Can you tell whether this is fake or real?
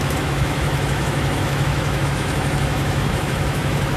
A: fake